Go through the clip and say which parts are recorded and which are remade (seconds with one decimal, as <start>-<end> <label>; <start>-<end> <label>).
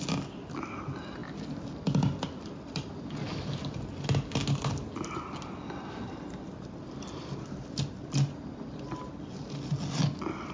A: 0.0-10.5 recorded